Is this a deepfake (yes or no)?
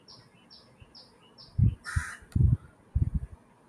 no